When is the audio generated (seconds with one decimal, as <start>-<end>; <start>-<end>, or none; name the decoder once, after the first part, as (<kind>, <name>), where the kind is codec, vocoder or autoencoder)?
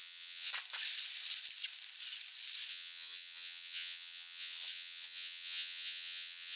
0.0-0.5 (vocoder, WaveNeXt); 2.7-6.6